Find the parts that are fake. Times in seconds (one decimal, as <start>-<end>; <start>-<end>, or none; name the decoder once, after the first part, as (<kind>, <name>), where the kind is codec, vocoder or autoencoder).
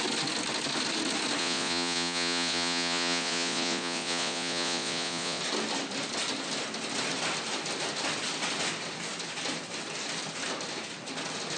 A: 1.4-5.4 (vocoder, Vocos)